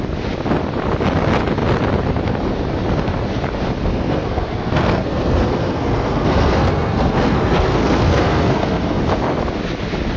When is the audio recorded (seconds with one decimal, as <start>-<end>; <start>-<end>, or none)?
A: 0.0-3.9; 9.0-10.2